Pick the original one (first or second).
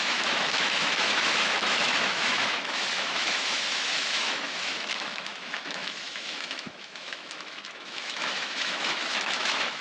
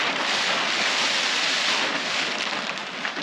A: second